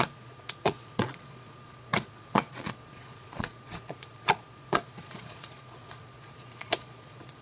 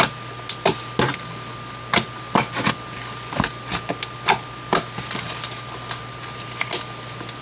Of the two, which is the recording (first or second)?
second